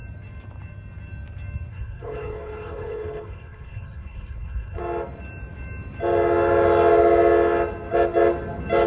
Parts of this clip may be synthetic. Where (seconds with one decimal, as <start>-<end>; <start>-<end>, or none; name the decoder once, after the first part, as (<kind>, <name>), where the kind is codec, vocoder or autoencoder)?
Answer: 1.7-4.8 (codec, HILCodec)